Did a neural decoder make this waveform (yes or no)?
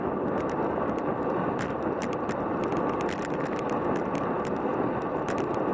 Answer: no